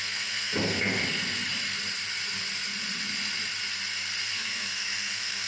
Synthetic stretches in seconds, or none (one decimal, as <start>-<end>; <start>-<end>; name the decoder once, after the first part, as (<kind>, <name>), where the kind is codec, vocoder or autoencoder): 0.0-1.0 (codec, SNAC); 4.3-5.5